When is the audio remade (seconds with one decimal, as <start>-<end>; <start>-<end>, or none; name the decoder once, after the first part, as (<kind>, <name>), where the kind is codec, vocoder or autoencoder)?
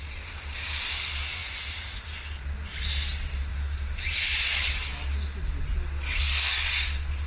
1.4-2.0 (vocoder, Vocos)